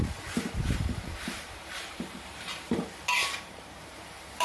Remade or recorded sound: remade